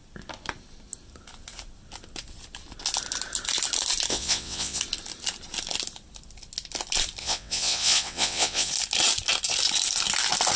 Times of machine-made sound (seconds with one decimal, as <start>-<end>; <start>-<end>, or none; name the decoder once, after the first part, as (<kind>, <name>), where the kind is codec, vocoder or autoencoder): 4.1-4.8 (vocoder, WaveNeXt); 7.2-8.7